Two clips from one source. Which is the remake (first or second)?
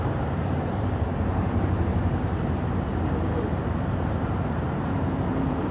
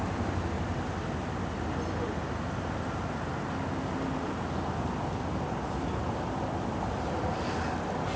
first